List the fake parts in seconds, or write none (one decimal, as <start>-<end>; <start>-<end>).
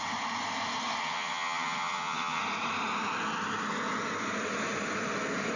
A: 1.0-2.4